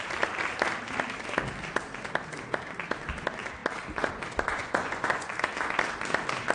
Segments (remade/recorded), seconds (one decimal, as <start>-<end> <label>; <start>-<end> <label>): 0.0-4.6 recorded; 4.6-5.3 remade; 5.3-6.5 recorded